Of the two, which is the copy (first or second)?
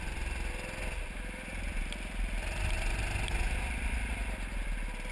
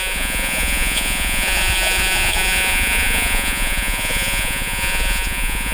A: second